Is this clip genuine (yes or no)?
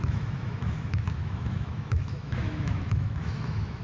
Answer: no